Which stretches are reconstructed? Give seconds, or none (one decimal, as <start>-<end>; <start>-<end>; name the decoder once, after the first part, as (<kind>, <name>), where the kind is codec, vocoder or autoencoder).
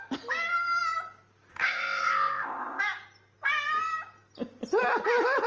1.5-2.8 (codec, ZipCodec)